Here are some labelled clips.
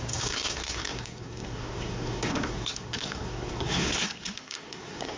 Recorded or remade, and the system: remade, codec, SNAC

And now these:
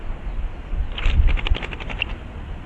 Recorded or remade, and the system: recorded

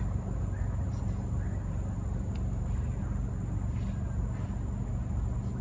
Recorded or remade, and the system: recorded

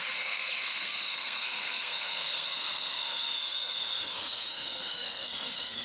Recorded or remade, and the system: remade, codec, SNAC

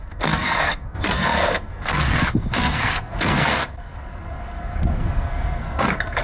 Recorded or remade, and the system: remade, codec, SNAC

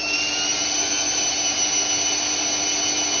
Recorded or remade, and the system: recorded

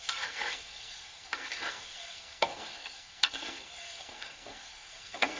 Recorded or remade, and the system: remade, codec, SNAC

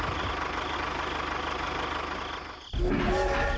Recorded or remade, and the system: recorded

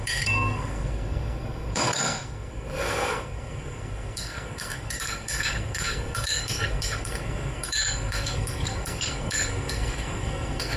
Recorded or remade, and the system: remade, codec, SNAC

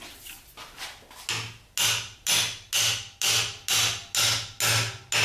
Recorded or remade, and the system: recorded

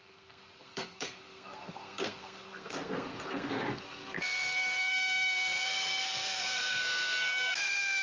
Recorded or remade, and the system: remade, codec, SNAC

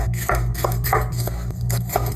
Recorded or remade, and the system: remade, codec, SNAC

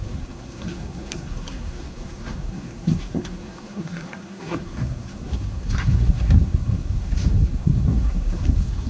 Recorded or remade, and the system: remade, codec, SNAC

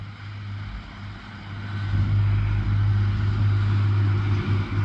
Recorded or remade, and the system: recorded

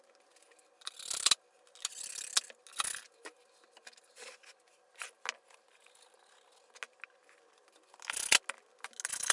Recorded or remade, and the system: recorded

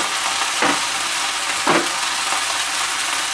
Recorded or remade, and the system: recorded